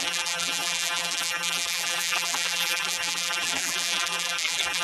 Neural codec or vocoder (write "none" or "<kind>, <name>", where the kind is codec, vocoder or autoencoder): vocoder, BigVGAN v2